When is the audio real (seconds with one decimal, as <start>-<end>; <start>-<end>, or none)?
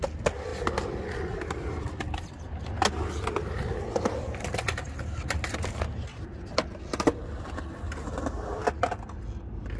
0.0-9.8